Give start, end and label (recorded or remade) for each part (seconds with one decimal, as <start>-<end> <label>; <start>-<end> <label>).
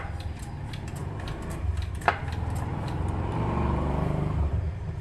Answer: 0.0-1.0 recorded; 1.0-2.2 remade; 2.2-2.7 recorded; 2.7-5.0 remade